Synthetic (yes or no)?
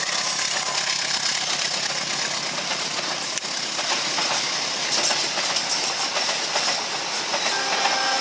no